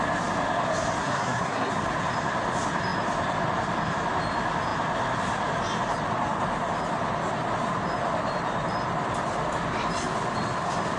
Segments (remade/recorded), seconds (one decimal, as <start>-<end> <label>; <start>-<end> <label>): 0.0-1.0 recorded; 1.0-1.7 remade; 1.7-11.0 recorded